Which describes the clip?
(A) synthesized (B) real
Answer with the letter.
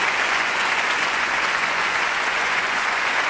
A